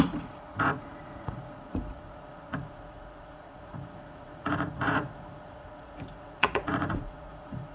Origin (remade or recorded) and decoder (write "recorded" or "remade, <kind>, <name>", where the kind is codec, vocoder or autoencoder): remade, vocoder, Vocos